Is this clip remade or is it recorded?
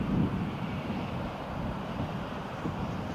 remade